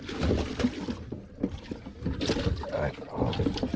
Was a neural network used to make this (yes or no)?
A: no